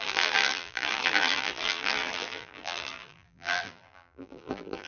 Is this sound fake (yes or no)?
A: yes